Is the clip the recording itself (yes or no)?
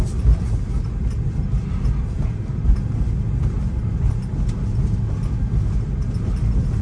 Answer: yes